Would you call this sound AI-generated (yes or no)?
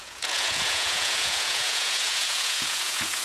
yes